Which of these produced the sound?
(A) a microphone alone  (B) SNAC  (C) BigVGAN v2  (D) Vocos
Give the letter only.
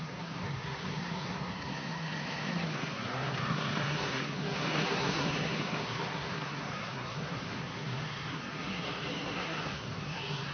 B